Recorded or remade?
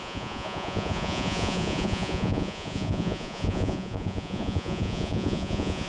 remade